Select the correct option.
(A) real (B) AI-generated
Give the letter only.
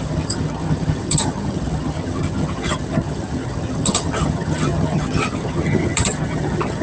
B